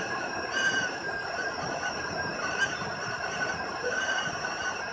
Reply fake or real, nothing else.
fake